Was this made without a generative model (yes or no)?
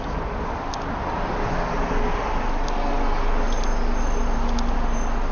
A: yes